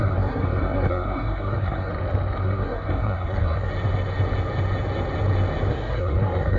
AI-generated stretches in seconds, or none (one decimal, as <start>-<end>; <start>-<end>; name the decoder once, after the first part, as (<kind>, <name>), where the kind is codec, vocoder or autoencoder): 0.0-1.9 (codec, SNAC); 2.4-3.7; 5.7-6.6